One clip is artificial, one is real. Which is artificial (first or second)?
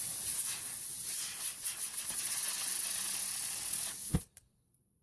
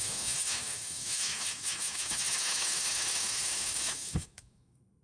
second